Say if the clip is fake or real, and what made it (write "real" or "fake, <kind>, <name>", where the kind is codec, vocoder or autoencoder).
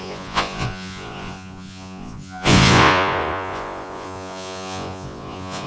fake, vocoder, Vocos